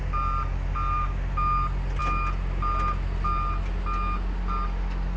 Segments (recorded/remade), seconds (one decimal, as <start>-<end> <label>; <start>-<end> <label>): 0.0-5.2 recorded

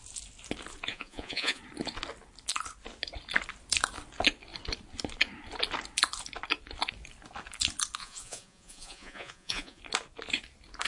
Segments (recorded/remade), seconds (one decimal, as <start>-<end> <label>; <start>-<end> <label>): 0.0-0.9 recorded; 0.9-1.6 remade; 1.6-8.0 recorded; 8.0-9.8 remade; 9.8-10.9 recorded

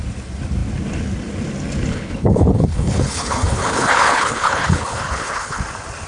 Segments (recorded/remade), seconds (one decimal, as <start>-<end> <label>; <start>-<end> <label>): 0.0-1.9 recorded; 1.9-5.6 remade; 5.6-6.1 recorded

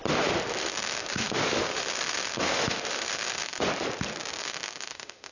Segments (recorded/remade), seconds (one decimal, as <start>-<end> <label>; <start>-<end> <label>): 0.0-0.6 recorded; 0.6-3.6 remade; 3.6-4.4 recorded; 4.4-5.3 remade

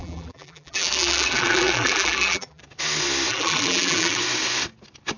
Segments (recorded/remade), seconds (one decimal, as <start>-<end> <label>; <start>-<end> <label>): 0.0-2.6 remade; 2.6-3.3 recorded; 3.3-4.2 remade; 4.2-5.2 recorded

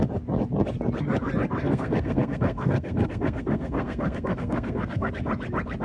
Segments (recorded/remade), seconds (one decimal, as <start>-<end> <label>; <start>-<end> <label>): 0.0-1.6 recorded; 1.6-5.1 remade; 5.1-5.8 recorded

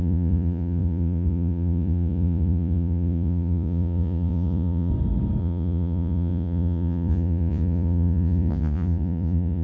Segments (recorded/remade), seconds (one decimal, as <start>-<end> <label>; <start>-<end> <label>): 0.0-4.9 remade; 4.9-5.4 recorded; 5.4-9.6 remade